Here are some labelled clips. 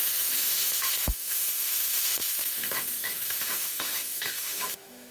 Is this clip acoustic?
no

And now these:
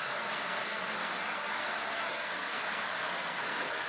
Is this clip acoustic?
no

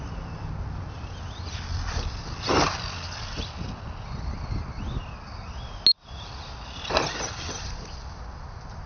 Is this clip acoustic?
yes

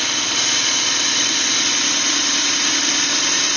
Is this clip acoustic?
yes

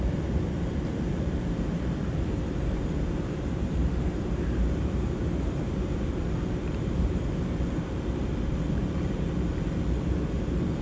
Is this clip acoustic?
no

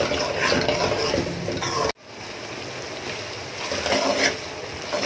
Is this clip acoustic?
yes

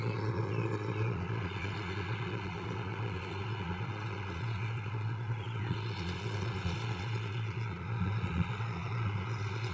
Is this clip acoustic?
no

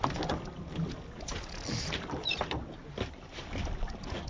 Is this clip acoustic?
yes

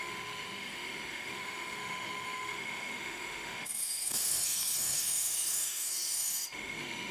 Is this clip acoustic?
no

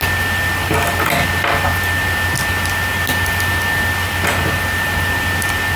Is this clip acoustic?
yes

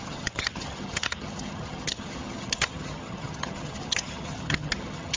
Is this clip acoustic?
no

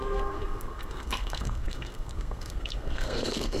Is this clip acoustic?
no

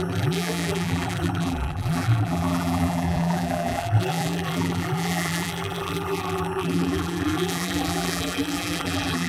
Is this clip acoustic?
no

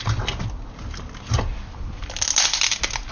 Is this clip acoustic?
yes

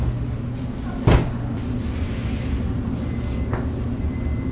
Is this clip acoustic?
yes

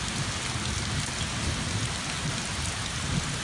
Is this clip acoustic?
yes